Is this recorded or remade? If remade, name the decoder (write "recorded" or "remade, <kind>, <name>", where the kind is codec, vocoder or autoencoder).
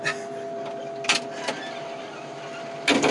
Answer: recorded